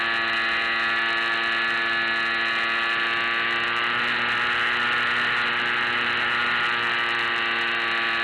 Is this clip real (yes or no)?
yes